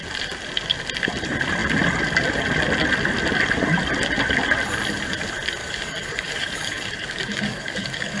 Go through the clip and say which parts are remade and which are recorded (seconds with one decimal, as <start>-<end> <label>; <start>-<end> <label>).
0.0-5.6 recorded; 5.6-8.2 remade